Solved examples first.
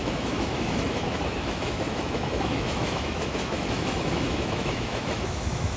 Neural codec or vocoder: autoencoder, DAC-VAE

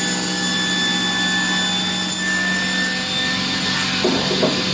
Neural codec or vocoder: none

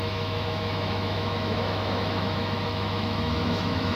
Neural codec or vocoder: autoencoder, DAC-VAE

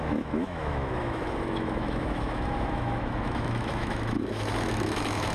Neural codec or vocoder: autoencoder, DAC-VAE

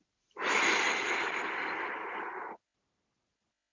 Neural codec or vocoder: none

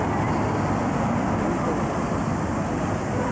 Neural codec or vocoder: none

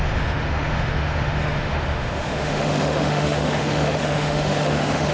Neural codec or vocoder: autoencoder, DAC-VAE